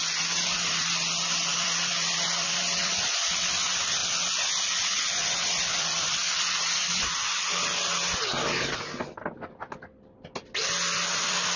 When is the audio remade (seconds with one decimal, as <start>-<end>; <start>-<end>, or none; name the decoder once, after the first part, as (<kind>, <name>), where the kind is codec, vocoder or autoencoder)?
4.9-6.9 (vocoder, BigVGAN v2)